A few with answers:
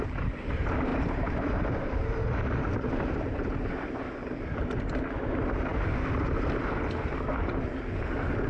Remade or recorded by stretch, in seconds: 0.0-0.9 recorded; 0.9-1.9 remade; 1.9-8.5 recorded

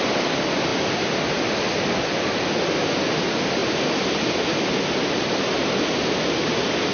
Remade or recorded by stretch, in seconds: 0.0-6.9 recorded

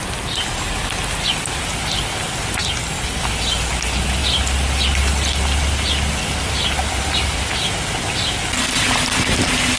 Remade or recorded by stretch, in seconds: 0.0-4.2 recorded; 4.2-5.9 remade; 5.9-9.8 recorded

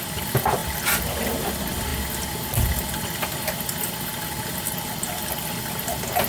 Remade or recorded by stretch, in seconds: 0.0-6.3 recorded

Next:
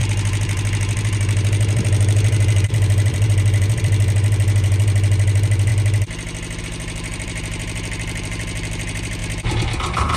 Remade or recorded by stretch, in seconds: 0.0-5.7 remade; 5.7-6.6 recorded; 6.6-10.2 remade

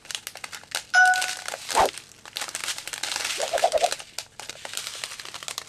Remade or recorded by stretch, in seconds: 0.0-5.7 recorded